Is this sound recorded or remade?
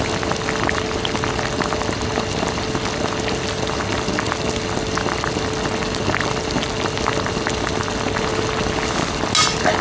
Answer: recorded